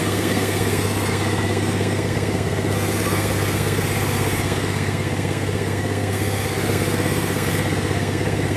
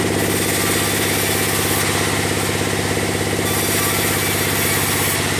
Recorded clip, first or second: second